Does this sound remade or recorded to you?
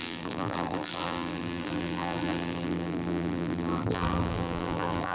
remade